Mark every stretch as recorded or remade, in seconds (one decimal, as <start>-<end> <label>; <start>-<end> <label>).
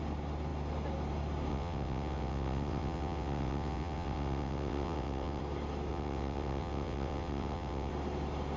0.0-1.5 recorded; 1.5-5.4 remade; 5.4-5.9 recorded; 5.9-7.9 remade; 7.9-8.6 recorded